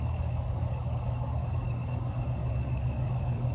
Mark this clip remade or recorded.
remade